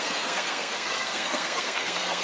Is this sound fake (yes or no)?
yes